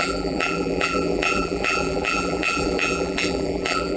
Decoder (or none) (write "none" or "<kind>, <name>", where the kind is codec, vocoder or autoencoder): vocoder, BigVGAN v2